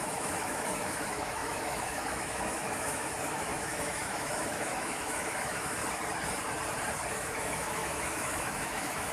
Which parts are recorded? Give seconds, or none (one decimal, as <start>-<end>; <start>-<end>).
5.8-7.1